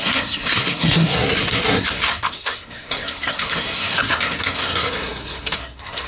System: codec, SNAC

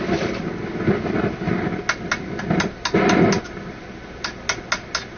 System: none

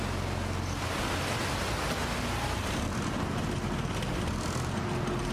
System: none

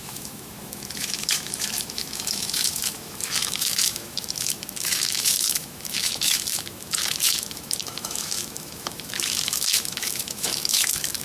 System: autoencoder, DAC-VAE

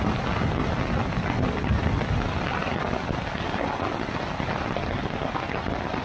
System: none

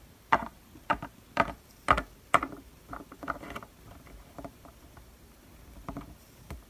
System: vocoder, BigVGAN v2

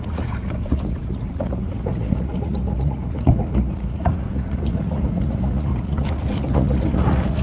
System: vocoder, Vocos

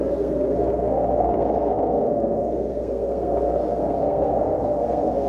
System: codec, SNAC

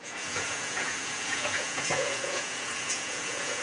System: vocoder, Vocos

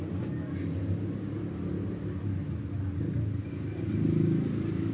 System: none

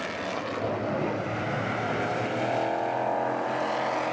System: none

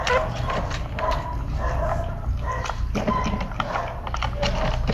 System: none